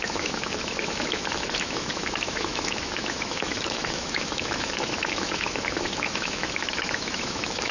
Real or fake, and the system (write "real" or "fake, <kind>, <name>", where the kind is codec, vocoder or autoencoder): fake, autoencoder, DAC-VAE